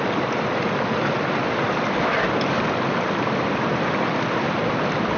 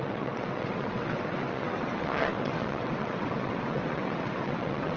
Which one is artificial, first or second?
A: second